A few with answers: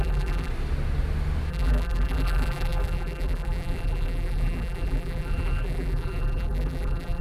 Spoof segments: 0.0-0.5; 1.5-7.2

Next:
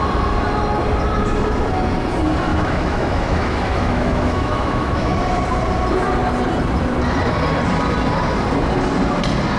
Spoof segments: 2.5-5.1

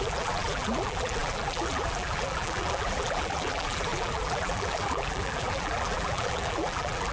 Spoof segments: 0.0-7.1